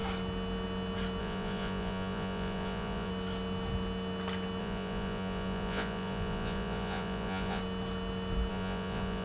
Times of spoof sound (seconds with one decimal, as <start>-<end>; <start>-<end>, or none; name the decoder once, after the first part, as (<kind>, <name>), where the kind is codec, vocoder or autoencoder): 1.2-3.1 (vocoder, Vocos); 4.6-7.6; 8.5-9.2